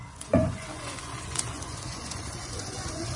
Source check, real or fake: fake